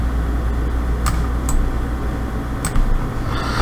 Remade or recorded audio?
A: recorded